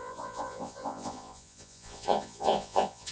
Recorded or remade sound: remade